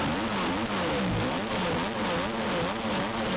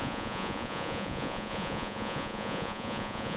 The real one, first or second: first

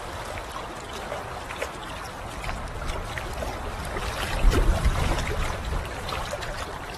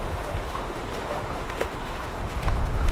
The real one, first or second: first